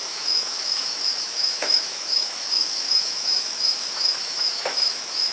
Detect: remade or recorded remade